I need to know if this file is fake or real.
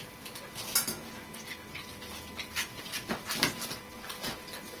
real